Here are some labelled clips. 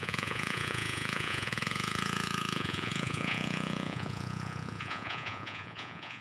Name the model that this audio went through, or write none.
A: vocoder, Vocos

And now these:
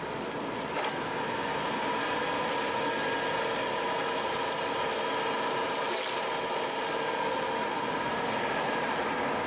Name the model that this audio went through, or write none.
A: none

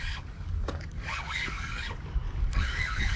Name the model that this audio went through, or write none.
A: codec, DAC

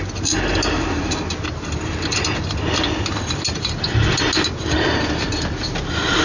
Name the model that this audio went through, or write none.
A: none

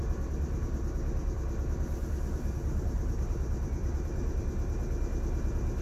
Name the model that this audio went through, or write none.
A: none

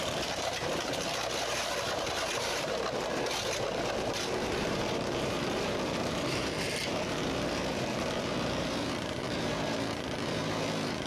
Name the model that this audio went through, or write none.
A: vocoder, BigVGAN v2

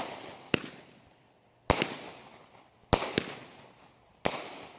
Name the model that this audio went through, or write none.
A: none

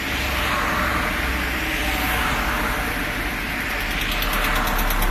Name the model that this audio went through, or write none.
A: none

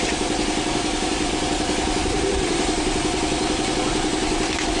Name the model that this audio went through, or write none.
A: none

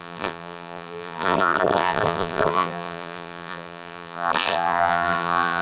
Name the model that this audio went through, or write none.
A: vocoder, BigVGAN v2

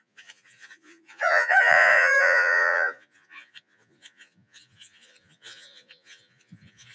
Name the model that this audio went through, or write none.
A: vocoder, Vocos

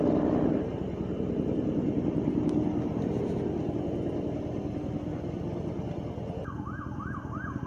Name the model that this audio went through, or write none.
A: none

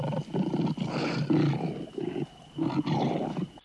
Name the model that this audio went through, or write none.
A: none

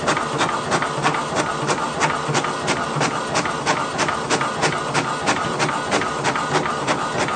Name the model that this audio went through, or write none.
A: none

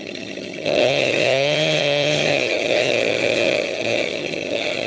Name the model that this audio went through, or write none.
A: vocoder, HiFi-GAN